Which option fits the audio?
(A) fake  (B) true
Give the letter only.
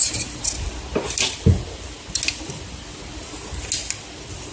B